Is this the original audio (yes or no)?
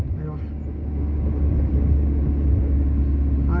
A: yes